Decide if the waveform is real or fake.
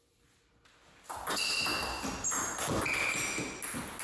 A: real